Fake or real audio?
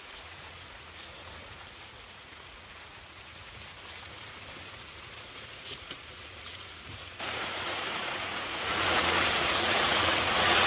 fake